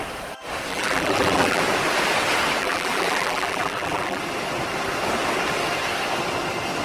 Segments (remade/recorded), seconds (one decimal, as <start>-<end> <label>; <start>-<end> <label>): 0.0-0.7 recorded; 0.7-1.6 remade; 1.6-2.6 recorded; 2.6-4.2 remade; 4.2-6.8 recorded